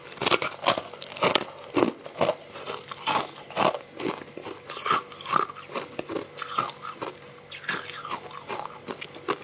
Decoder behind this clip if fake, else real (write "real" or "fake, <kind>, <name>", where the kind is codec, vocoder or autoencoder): real